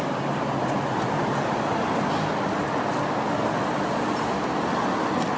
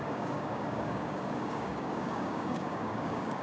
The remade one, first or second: second